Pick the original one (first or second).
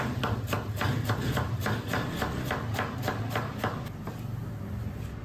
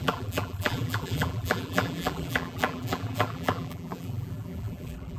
first